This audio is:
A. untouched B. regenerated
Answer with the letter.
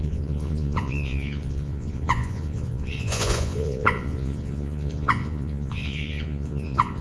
B